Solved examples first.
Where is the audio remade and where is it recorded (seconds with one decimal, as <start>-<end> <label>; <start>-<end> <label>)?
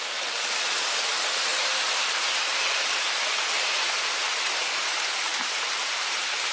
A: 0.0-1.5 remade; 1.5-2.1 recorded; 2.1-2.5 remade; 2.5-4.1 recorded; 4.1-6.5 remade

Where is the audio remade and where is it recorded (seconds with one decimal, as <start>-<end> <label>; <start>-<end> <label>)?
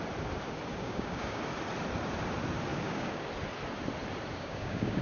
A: 0.0-0.7 recorded; 0.7-1.4 remade; 1.4-2.7 recorded; 2.7-3.3 remade; 3.3-4.3 recorded; 4.3-5.0 remade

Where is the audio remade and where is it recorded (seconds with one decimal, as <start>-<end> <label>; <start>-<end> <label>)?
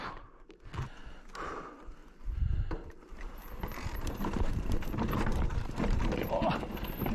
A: 0.0-2.0 recorded; 2.0-6.3 remade; 6.3-7.1 recorded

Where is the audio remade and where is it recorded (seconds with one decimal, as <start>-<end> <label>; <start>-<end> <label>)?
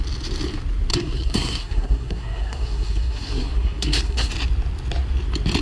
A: 0.0-0.9 recorded; 0.9-4.3 remade; 4.3-5.6 recorded